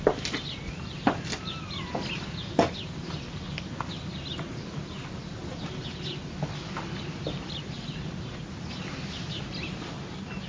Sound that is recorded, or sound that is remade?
recorded